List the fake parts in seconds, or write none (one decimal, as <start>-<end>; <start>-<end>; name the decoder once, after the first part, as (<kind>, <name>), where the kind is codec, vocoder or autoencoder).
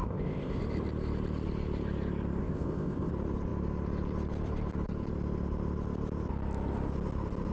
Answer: 0.0-0.6 (codec, ZipCodec); 2.4-3.1